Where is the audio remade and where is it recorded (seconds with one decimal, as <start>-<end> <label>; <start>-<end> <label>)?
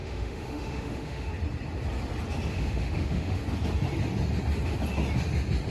0.0-1.3 remade; 1.3-2.5 recorded; 2.5-3.4 remade; 3.4-5.7 recorded